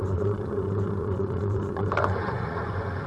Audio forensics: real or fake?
fake